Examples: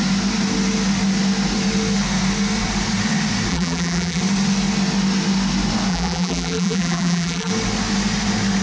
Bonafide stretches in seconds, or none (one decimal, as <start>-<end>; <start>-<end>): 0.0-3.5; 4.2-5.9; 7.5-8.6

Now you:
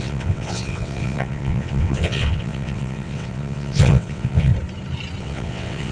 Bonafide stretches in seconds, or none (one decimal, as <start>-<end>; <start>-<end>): 4.5-5.2

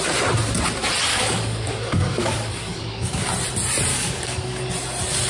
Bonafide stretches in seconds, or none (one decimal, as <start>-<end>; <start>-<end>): 0.0-1.1; 3.3-3.9; 4.7-5.3

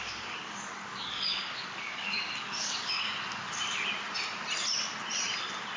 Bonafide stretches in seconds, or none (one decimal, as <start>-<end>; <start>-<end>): 3.1-5.8

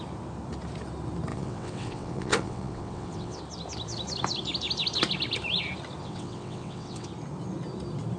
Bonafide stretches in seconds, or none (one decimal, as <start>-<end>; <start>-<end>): 0.0-1.3; 3.4-6.0; 7.1-8.2

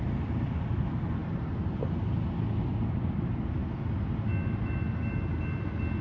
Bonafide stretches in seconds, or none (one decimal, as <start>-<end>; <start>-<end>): 0.0-6.0

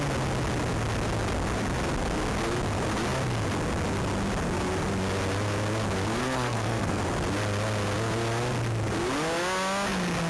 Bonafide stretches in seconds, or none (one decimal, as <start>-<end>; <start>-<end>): 0.0-6.2; 7.0-10.3

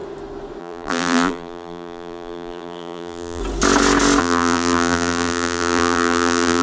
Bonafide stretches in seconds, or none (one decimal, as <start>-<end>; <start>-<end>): 0.0-0.6; 3.4-4.2